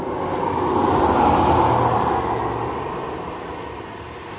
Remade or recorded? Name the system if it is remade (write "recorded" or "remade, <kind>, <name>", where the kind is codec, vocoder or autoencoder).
recorded